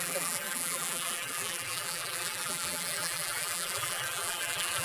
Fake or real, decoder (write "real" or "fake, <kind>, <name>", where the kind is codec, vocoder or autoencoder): fake, vocoder, BigVGAN v2